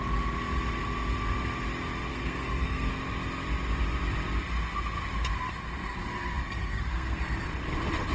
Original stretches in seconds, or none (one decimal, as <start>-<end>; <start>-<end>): 0.0-2.1; 2.9-6.0; 7.2-8.1

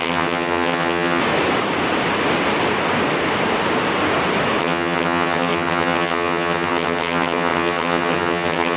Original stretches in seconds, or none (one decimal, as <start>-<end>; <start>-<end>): 1.2-4.6

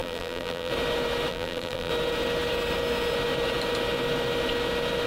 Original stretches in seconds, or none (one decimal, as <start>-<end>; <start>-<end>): 0.7-1.3; 1.9-5.1